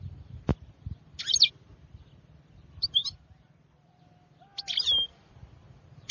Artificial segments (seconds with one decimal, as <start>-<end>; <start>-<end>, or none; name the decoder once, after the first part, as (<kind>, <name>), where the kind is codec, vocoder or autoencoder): none